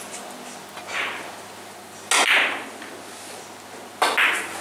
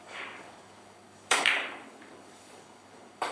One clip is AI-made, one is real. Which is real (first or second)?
first